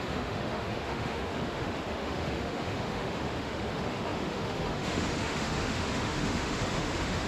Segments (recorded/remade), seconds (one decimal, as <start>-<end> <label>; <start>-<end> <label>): 0.0-7.3 remade